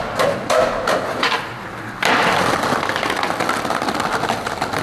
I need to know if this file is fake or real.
real